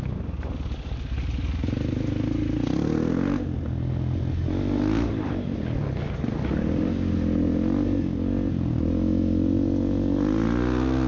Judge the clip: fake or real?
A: real